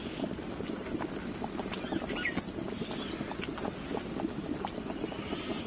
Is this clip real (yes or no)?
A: yes